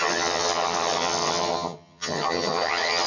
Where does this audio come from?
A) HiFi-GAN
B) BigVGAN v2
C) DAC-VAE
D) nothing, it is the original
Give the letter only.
A